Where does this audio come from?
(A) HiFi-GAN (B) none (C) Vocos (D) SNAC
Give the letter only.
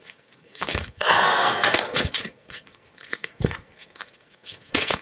D